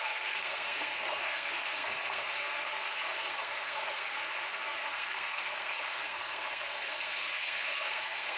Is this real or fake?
fake